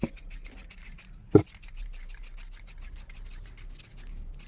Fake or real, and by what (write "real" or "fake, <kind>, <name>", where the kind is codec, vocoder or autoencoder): real